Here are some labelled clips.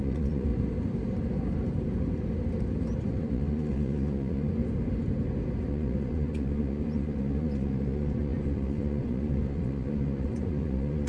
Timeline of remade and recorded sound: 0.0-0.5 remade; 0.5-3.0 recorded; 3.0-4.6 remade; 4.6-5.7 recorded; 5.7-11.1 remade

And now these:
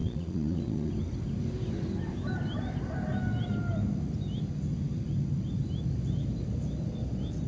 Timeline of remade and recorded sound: 0.0-0.9 remade; 0.9-7.5 recorded

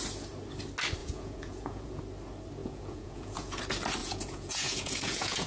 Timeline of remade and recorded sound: 0.0-1.0 recorded; 1.0-2.0 remade; 2.0-2.6 recorded; 2.6-3.6 remade; 3.6-4.0 recorded; 4.0-5.5 remade

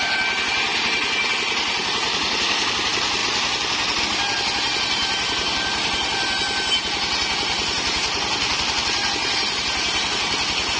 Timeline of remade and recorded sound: 0.0-10.8 recorded

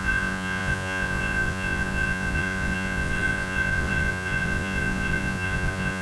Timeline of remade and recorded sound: 0.0-6.0 remade

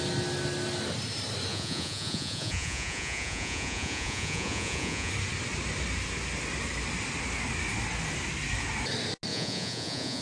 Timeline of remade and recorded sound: 0.0-1.5 recorded; 1.5-5.1 remade; 5.1-9.3 recorded; 9.3-10.2 remade

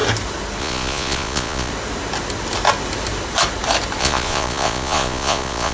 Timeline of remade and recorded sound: 0.0-0.6 recorded; 0.6-1.7 remade; 1.7-4.0 recorded; 4.0-5.7 remade